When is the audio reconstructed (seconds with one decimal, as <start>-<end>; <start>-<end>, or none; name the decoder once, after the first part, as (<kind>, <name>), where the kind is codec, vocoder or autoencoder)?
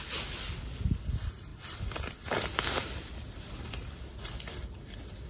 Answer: none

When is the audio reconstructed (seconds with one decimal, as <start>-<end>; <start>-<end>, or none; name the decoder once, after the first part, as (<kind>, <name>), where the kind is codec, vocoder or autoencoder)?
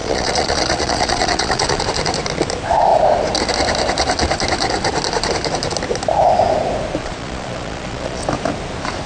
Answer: 0.0-1.8 (vocoder, Vocos); 7.0-8.2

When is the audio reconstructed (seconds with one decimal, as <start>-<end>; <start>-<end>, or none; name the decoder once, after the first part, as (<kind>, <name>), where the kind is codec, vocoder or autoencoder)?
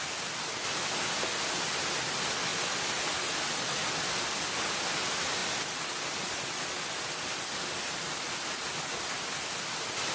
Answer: none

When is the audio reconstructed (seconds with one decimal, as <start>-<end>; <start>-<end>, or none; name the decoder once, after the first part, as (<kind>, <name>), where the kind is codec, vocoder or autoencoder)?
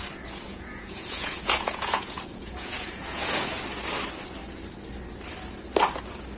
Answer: 0.5-3.6 (vocoder, Vocos)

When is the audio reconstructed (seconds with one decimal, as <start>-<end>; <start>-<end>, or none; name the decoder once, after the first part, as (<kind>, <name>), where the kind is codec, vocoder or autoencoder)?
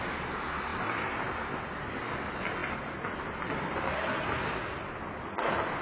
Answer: none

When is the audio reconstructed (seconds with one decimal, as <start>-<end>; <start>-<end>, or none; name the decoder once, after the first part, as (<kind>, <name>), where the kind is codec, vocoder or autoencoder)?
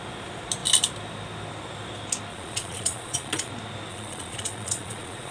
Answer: 2.3-3.5 (vocoder, Vocos); 3.9-5.3